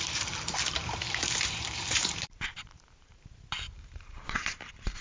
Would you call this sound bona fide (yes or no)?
no